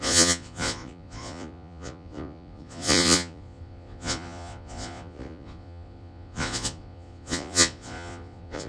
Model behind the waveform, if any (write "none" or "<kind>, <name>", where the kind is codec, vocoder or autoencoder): vocoder, Vocos